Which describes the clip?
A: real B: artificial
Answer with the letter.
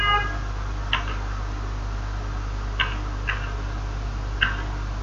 A